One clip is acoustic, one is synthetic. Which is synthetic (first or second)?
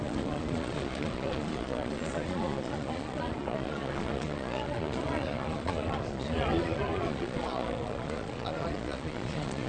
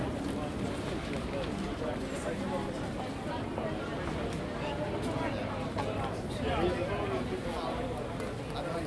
first